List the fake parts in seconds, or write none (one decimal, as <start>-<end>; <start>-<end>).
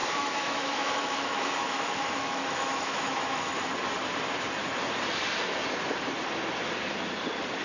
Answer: 0.0-3.5